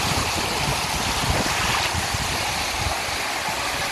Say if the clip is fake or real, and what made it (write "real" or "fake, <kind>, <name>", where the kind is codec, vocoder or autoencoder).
real